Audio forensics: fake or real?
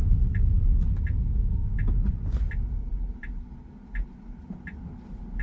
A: real